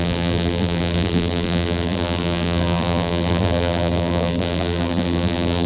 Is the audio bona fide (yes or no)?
no